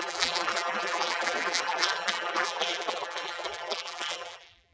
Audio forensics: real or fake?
fake